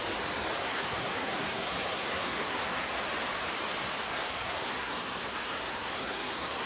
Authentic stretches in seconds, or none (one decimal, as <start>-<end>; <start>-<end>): 0.0-0.6; 2.9-4.0